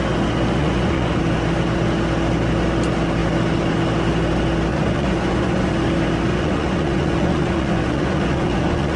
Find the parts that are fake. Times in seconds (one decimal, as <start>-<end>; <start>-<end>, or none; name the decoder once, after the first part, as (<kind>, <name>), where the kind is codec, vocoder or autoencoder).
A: 0.6-1.2 (vocoder, Vocos); 4.7-5.7; 6.3-9.0